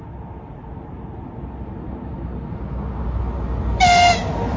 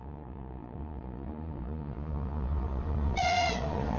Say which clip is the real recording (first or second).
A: first